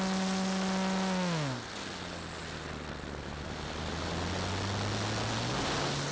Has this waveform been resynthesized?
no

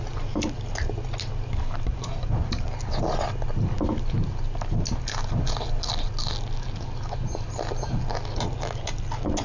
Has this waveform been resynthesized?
no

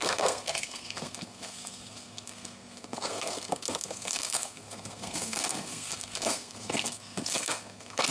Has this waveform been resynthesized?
yes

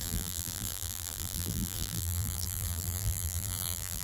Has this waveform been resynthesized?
yes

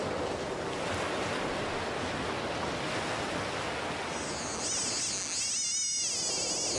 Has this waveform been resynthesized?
no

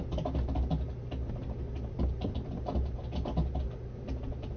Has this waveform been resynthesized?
no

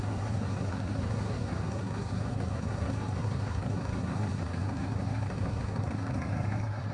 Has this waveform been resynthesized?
yes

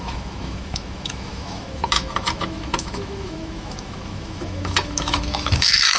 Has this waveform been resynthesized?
yes